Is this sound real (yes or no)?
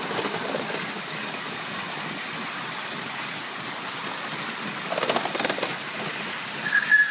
yes